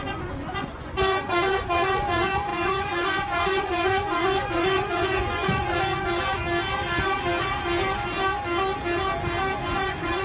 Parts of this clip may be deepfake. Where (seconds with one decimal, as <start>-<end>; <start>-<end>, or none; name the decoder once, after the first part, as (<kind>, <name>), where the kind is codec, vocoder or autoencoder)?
0.0-6.4 (vocoder, Vocos); 9.6-10.2